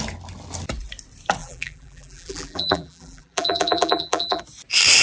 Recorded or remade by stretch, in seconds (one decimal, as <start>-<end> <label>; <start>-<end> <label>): 0.0-1.4 recorded; 1.4-4.4 remade; 4.4-5.0 recorded